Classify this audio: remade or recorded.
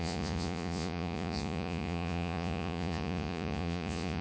remade